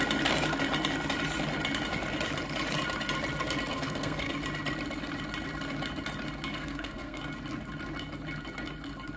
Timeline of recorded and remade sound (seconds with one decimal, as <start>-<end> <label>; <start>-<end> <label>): 0.0-3.7 recorded; 3.7-4.3 remade; 4.3-6.5 recorded; 6.5-7.2 remade; 7.2-9.2 recorded

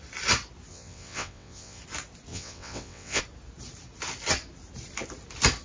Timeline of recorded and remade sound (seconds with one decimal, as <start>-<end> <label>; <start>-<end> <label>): 0.0-0.7 recorded; 0.7-1.8 remade; 1.8-2.3 recorded; 2.3-3.2 remade; 3.2-5.6 recorded

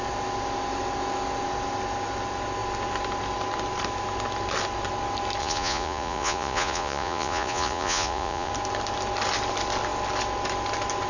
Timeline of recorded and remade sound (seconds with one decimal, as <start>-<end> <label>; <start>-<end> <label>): 0.0-5.4 recorded; 5.4-8.5 remade; 8.5-11.1 recorded

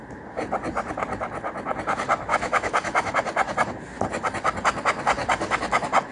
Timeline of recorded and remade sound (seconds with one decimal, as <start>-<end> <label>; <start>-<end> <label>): 0.0-2.3 recorded; 2.3-3.1 remade; 3.1-6.1 recorded

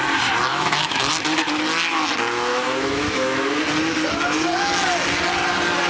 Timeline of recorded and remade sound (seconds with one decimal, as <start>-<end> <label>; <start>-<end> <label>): 0.0-0.5 recorded; 0.5-1.1 remade; 1.1-2.5 recorded; 2.5-3.6 remade; 3.6-5.9 recorded

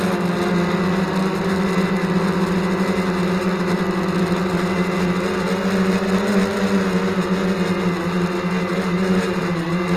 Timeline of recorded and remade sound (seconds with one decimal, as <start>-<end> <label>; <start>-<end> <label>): 0.0-8.7 recorded; 8.7-9.4 remade; 9.4-10.0 recorded

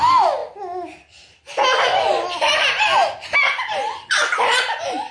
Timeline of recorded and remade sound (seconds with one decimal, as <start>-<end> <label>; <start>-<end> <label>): 0.0-5.1 recorded

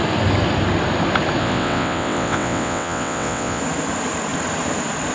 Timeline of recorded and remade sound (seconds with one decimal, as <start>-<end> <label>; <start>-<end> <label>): 0.0-1.4 recorded; 1.4-3.6 remade; 3.6-5.1 recorded